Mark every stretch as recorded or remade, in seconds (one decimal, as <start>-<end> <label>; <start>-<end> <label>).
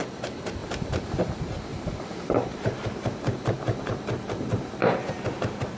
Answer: 0.0-0.6 recorded; 0.6-1.2 remade; 1.2-1.7 recorded; 1.7-5.2 remade; 5.2-5.8 recorded